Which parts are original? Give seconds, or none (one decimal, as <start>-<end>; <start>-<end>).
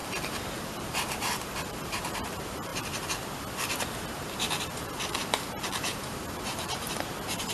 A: 2.7-4.0